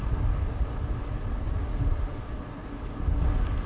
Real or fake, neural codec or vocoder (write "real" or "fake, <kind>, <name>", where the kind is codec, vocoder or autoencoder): real